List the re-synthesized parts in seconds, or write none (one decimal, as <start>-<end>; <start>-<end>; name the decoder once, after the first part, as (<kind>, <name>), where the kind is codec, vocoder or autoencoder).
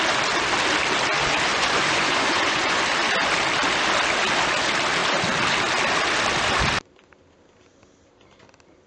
1.5-2.8 (vocoder, Vocos)